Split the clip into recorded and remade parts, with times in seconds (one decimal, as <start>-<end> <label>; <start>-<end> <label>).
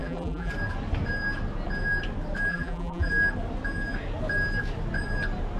0.0-0.5 remade; 0.5-2.5 recorded; 2.5-3.1 remade; 3.1-5.6 recorded